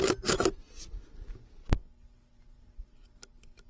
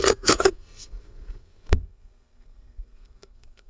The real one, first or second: first